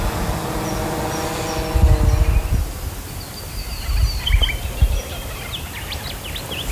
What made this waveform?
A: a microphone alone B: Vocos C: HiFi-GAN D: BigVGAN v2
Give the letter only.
A